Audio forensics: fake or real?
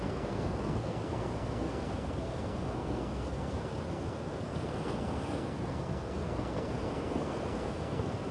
fake